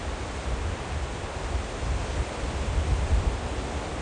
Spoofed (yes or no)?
no